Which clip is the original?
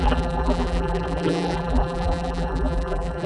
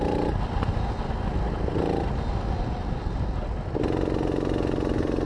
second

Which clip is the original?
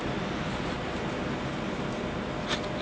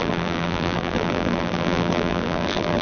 first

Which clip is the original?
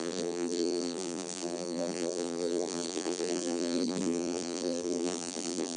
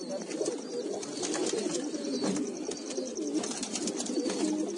second